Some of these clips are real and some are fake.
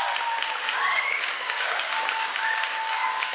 fake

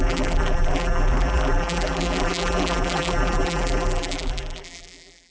fake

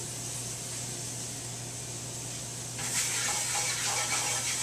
real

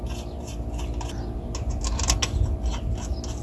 real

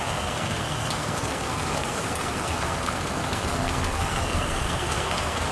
fake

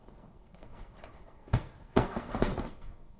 fake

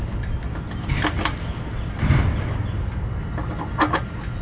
real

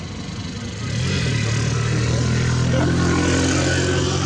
real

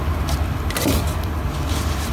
real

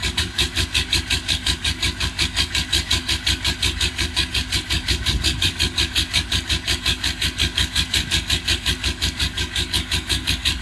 fake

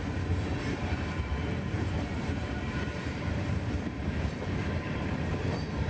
fake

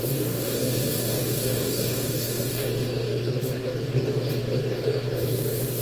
fake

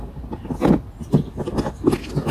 real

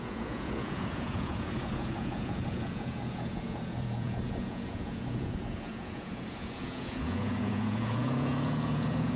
fake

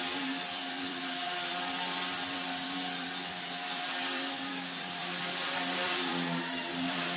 fake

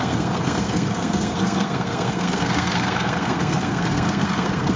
fake